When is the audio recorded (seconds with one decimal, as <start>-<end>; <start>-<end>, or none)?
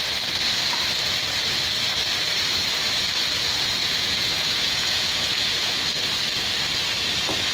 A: 0.0-3.8; 5.8-7.5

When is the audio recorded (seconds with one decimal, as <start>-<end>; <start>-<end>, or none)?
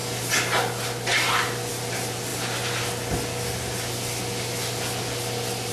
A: 0.0-5.7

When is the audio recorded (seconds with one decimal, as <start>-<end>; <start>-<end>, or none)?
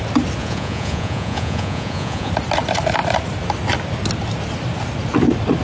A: 0.0-0.4; 2.3-5.6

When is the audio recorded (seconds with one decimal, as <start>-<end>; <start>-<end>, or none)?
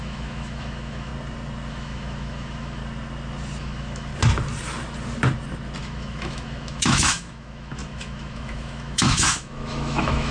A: 1.1-1.7; 2.8-3.6; 4.1-5.8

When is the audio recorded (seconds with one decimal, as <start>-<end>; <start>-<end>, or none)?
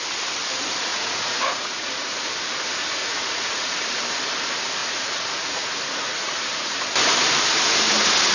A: 0.0-0.9; 1.9-3.0; 3.8-4.8; 6.8-8.3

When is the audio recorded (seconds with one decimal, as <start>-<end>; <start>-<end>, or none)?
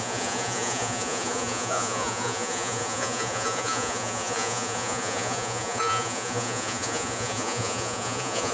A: none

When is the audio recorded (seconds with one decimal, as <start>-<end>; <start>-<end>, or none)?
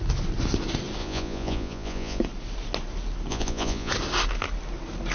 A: 0.0-1.0; 2.2-3.3; 3.9-5.1